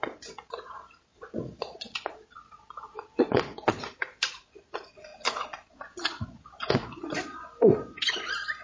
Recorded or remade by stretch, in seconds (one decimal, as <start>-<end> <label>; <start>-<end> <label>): 0.0-8.6 remade